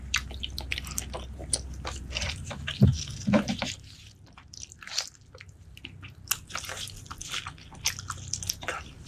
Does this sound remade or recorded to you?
recorded